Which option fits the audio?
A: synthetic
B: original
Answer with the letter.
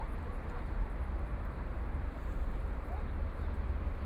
A